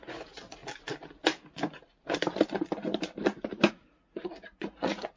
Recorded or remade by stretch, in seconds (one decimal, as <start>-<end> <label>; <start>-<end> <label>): 0.0-0.6 remade; 0.6-3.7 recorded; 3.7-5.2 remade